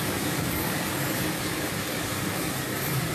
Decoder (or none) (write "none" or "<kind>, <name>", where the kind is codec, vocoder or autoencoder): codec, DAC